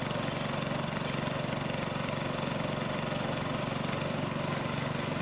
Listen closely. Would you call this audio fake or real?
real